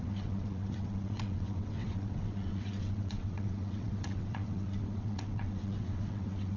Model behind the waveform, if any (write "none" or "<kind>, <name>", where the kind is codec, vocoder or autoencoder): vocoder, WaveNeXt